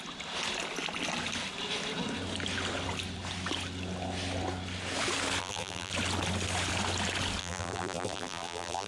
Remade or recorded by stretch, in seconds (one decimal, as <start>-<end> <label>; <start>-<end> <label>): 0.0-5.4 recorded; 5.4-5.9 remade; 5.9-7.4 recorded; 7.4-8.9 remade